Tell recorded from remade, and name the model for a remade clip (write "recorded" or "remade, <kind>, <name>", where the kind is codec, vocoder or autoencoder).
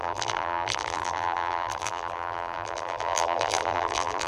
remade, vocoder, BigVGAN v2